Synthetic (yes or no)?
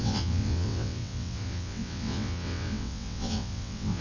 yes